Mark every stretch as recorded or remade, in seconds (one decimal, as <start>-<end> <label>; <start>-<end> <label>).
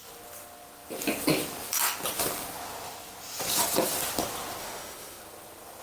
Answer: 0.0-4.6 recorded; 4.6-5.2 remade; 5.2-5.8 recorded